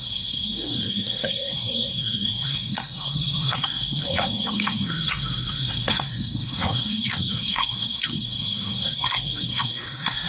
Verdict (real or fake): fake